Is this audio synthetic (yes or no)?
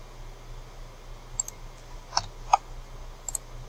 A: no